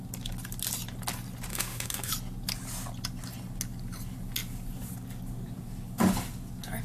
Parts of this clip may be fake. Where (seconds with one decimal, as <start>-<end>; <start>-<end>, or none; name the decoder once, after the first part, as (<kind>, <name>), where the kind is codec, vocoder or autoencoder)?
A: 1.5-2.1 (autoencoder, DAC-VAE)

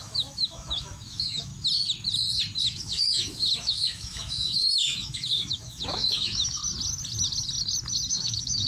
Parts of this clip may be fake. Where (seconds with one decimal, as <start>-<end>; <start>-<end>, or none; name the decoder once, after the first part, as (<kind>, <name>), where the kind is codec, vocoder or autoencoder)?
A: 0.0-1.5 (autoencoder, DAC-VAE); 2.6-6.6; 8.1-8.7

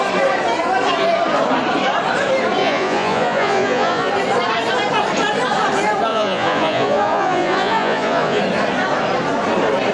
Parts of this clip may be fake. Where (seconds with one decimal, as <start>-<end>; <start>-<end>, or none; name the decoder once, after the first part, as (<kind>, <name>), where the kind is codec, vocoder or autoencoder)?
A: 2.6-4.1 (vocoder, Vocos); 6.1-8.4

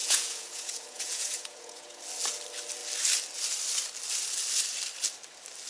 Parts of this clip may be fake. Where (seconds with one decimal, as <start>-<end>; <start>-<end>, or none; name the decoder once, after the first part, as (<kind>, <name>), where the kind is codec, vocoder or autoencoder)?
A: 0.0-2.0 (vocoder, Vocos)

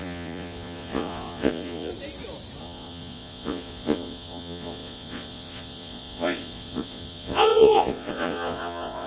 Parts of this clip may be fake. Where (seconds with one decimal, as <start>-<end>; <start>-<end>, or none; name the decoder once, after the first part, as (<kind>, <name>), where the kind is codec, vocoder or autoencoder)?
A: 0.0-1.9 (vocoder, Vocos); 2.6-9.1

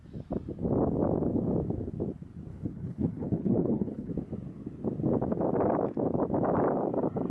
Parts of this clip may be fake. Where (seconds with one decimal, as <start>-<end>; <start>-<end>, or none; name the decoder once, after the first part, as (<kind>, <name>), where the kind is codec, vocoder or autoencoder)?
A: 2.5-4.1 (codec, HILCodec)

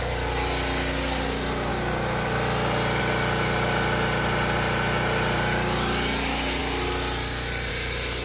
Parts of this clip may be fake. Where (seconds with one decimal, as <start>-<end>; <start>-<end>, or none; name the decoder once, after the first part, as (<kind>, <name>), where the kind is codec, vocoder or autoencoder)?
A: none

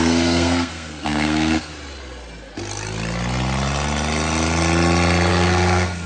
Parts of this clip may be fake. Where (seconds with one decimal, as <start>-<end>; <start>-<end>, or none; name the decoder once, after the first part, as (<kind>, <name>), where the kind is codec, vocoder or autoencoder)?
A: 0.0-1.7 (codec, SNAC); 5.3-6.1